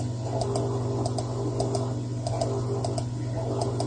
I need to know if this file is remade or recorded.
recorded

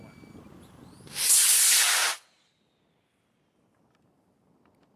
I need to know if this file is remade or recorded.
recorded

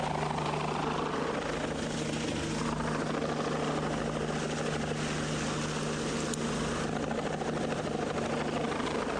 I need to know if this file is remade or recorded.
recorded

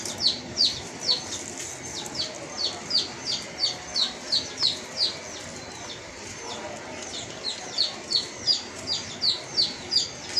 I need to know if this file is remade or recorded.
recorded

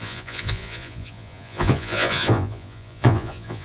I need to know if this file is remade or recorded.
remade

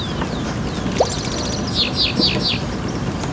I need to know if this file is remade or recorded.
recorded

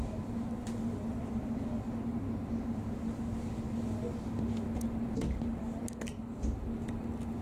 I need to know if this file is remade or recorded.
recorded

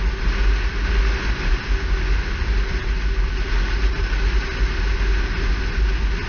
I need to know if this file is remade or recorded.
recorded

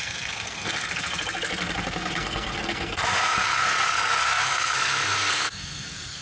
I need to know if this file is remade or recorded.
remade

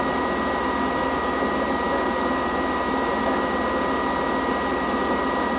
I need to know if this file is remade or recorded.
recorded